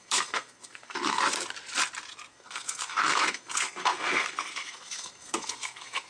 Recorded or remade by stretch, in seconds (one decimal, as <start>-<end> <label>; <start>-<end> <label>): 0.0-1.2 remade; 1.2-2.3 recorded; 2.3-6.1 remade